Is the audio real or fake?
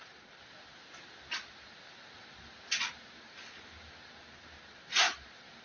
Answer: real